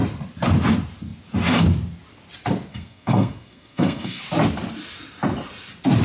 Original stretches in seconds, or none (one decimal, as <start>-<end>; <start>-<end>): 0.0-2.7; 4.2-6.0